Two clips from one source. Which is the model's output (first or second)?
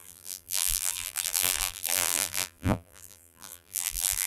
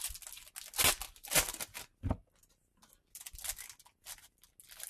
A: first